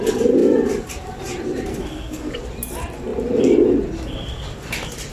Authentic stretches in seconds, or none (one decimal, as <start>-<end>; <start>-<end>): 0.0-1.7; 2.3-5.1